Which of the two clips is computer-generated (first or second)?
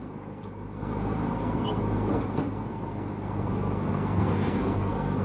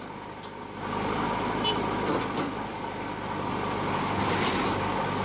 first